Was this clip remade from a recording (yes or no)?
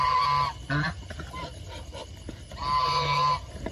no